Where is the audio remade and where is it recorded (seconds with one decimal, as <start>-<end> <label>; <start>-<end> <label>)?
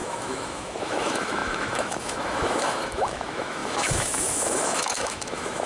0.0-5.7 remade